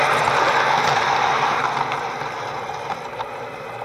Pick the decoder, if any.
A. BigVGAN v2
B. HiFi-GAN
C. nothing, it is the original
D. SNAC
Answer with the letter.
C